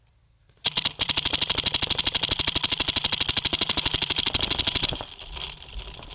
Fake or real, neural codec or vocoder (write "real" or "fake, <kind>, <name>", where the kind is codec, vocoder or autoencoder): fake, vocoder, BigVGAN v2